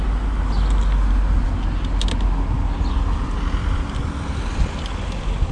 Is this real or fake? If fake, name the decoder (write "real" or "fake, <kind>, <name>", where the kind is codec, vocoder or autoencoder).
real